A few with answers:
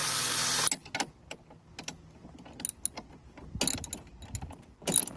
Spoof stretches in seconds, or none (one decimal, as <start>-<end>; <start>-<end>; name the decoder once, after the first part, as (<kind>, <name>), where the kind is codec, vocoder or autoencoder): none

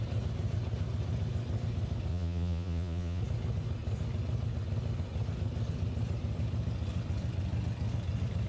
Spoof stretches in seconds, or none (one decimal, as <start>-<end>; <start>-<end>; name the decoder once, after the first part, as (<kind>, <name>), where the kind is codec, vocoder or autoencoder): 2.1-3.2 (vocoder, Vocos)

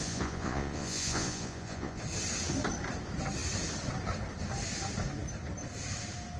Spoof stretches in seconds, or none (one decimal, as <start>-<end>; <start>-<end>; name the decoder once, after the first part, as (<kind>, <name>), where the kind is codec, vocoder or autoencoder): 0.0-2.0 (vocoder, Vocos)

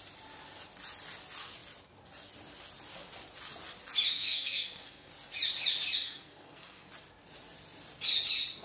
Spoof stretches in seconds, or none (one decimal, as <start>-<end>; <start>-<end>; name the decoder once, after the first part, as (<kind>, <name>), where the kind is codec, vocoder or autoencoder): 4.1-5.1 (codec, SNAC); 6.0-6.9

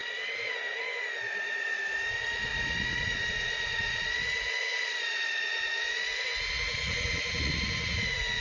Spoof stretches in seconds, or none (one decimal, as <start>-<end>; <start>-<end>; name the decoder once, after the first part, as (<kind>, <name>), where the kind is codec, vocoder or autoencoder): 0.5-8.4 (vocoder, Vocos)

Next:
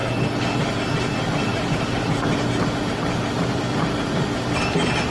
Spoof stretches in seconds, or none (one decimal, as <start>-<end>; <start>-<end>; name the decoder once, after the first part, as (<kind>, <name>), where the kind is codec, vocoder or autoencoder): 1.5-4.6 (vocoder, BigVGAN v2)

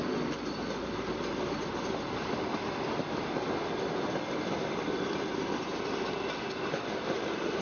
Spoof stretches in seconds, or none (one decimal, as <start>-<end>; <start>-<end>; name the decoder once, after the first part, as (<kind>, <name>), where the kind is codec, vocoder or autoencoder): none

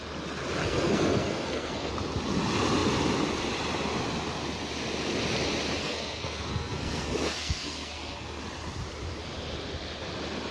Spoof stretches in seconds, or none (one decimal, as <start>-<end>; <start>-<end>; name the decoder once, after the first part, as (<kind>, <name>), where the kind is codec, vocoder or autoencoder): 0.6-1.9 (codec, SNAC); 5.8-8.4